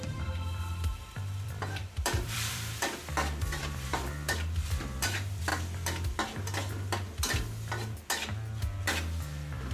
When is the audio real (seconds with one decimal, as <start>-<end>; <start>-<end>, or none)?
5.5-8.8